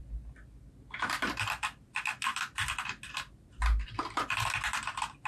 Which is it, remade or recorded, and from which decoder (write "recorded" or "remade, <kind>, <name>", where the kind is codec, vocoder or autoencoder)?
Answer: recorded